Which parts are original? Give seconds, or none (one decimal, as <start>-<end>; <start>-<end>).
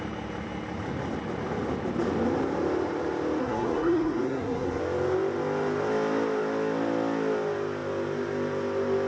0.0-3.4; 4.8-9.1